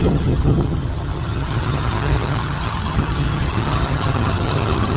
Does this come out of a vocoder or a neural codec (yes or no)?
yes